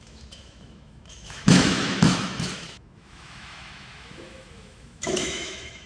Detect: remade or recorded remade